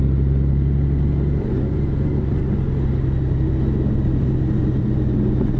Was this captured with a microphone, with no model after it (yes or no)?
yes